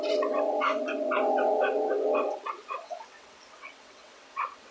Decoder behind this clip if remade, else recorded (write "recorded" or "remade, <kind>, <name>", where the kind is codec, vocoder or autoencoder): remade, vocoder, WaveNeXt